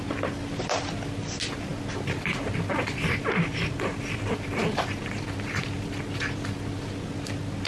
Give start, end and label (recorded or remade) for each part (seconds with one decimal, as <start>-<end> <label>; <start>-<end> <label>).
0.0-7.7 recorded